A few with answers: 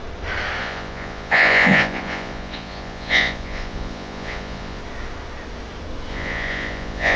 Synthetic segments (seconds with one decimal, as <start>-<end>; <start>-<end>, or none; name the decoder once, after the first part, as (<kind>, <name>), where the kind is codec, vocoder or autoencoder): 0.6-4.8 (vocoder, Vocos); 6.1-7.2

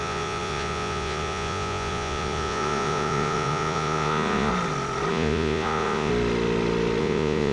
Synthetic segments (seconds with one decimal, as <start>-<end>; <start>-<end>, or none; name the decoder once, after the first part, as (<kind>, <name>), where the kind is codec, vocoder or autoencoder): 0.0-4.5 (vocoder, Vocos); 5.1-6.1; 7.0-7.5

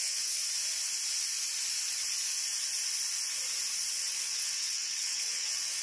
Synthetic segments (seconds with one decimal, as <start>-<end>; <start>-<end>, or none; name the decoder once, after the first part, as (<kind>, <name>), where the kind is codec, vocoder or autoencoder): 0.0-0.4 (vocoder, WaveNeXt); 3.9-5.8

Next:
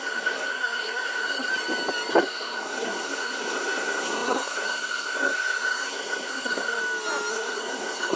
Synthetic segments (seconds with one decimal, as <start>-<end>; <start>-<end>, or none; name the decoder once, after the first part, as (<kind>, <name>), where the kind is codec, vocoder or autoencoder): 0.0-1.5 (codec, SNAC); 2.1-6.8; 7.3-8.2

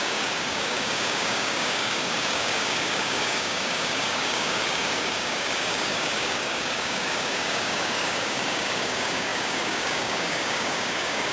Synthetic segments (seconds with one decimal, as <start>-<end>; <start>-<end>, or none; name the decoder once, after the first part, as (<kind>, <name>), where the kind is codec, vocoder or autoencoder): 0.0-11.3 (codec, DAC)

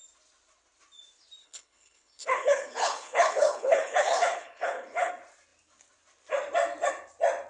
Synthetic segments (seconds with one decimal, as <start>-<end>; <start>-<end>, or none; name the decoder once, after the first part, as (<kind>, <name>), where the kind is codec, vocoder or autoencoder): 1.4-5.1 (codec, HILCodec)

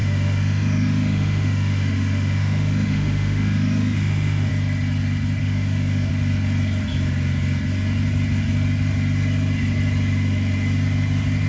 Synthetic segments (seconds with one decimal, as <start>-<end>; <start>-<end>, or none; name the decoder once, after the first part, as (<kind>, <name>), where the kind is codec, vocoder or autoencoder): 0.0-4.5 (autoencoder, DAC-VAE); 5.4-6.1